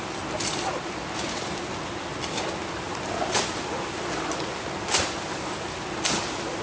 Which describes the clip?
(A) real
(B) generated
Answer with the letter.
A